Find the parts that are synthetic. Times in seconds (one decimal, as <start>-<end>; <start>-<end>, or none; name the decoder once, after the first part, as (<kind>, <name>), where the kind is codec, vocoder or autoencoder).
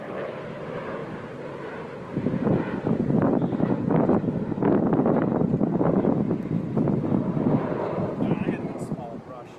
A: 1.0-2.2 (vocoder, BigVGAN v2)